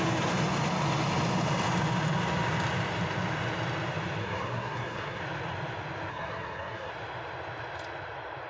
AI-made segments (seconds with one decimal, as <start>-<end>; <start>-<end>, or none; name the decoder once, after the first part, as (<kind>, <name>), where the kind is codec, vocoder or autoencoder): 4.2-5.2 (codec, SNAC); 6.1-6.9